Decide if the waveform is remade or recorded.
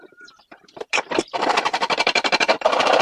remade